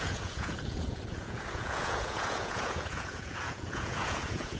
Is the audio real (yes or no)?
no